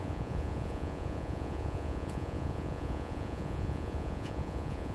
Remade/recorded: remade